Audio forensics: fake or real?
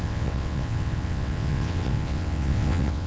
fake